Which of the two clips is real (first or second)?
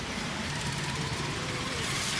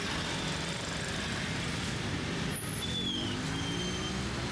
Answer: second